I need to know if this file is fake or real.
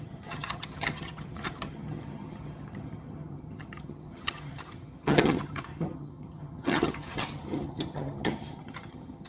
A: fake